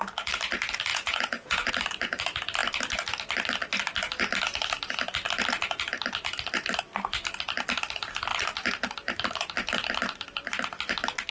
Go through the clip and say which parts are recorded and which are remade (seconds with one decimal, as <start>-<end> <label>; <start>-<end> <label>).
0.0-0.9 recorded; 0.9-1.7 remade; 1.7-11.3 recorded